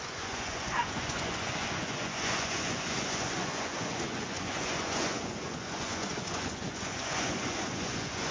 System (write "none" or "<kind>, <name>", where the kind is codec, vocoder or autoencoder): vocoder, Vocos